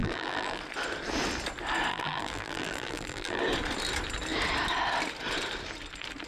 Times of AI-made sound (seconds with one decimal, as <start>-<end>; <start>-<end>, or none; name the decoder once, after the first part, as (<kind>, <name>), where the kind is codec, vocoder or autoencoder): 0.0-0.6 (vocoder, BigVGAN v2); 1.9-3.4